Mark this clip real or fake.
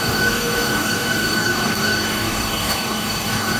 fake